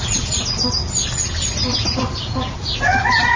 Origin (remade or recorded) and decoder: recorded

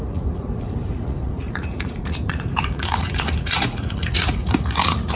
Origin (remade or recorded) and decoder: remade, vocoder, Vocos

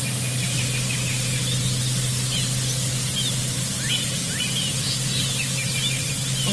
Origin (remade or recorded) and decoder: recorded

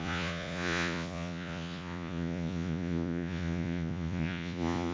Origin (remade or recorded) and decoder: remade, vocoder, Vocos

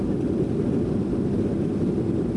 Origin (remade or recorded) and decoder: recorded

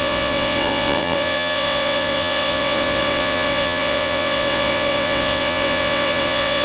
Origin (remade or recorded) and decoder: remade, vocoder, WaveNeXt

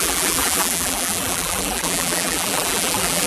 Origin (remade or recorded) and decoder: remade, vocoder, BigVGAN v2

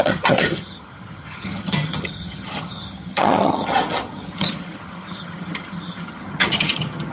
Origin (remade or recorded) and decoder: remade, vocoder, HiFi-GAN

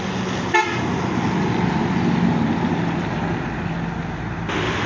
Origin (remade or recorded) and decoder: recorded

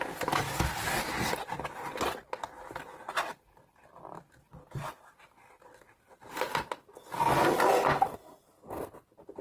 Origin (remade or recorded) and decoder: recorded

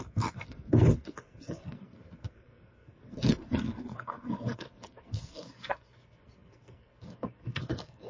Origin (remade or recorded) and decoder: remade, codec, SNAC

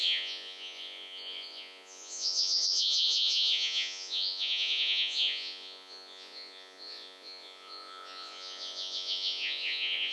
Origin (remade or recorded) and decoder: remade, vocoder, Vocos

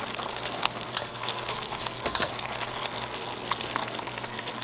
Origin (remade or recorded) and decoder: remade, codec, SNAC